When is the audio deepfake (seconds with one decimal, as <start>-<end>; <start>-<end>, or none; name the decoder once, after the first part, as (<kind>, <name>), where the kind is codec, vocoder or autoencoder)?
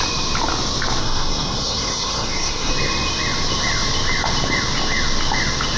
1.0-2.7 (codec, SNAC)